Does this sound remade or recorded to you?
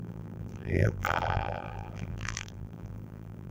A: remade